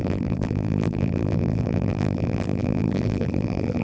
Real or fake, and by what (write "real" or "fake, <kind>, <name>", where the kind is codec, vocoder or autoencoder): fake, vocoder, BigVGAN v2